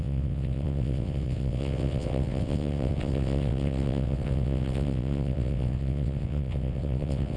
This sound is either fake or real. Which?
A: fake